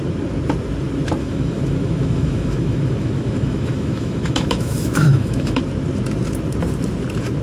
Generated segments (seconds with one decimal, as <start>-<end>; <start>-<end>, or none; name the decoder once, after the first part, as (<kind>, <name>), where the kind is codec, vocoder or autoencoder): 1.2-5.6 (autoencoder, DAC-VAE)